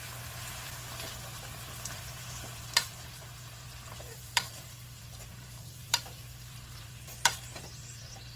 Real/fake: fake